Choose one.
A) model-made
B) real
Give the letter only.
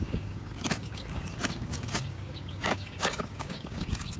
A